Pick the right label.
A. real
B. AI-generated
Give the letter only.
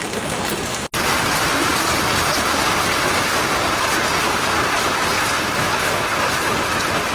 A